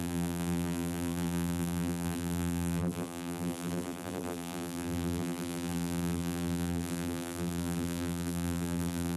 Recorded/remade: remade